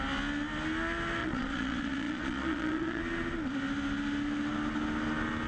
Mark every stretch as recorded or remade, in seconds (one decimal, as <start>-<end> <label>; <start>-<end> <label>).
0.0-1.2 recorded; 1.2-3.0 remade; 3.0-5.5 recorded